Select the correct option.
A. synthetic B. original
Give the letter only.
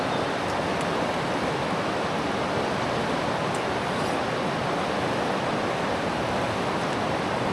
B